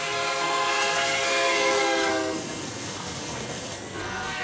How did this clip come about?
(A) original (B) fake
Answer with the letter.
B